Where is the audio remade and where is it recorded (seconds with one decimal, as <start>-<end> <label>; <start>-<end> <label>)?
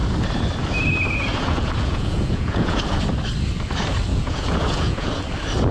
0.0-1.3 recorded; 1.3-2.8 remade; 2.8-4.1 recorded; 4.1-5.1 remade; 5.1-5.7 recorded